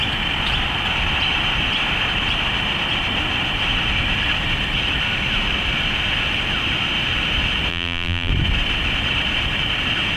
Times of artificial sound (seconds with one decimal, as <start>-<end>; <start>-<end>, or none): 7.7-8.3